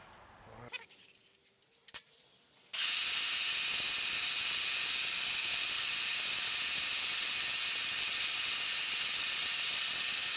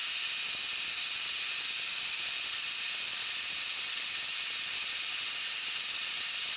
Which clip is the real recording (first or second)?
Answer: first